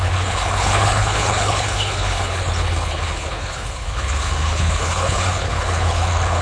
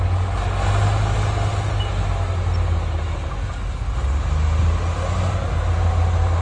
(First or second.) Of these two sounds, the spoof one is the first